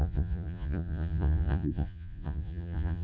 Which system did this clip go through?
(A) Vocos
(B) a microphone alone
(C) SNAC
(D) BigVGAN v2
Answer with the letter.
A